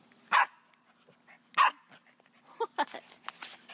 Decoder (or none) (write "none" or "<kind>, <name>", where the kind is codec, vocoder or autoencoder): none